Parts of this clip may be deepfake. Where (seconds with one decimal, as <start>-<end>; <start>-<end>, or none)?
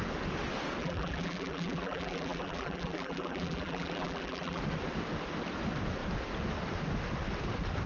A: 0.8-4.6